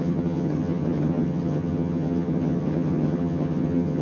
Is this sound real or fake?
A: fake